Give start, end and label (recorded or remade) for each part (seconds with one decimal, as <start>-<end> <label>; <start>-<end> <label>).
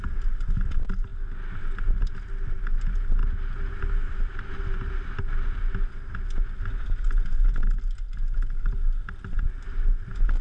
0.0-10.4 recorded